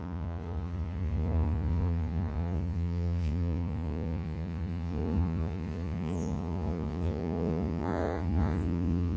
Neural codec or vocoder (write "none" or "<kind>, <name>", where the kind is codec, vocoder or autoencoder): vocoder, Vocos